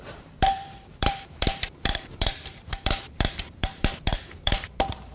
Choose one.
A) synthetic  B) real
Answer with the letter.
A